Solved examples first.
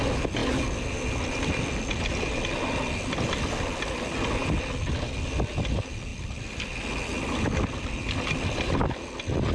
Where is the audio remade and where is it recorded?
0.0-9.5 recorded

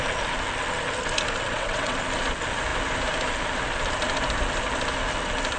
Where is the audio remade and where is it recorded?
0.0-1.5 recorded; 1.5-2.0 remade; 2.0-5.6 recorded

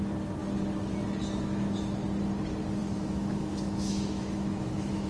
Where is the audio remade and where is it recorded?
0.0-2.8 recorded; 2.8-5.1 remade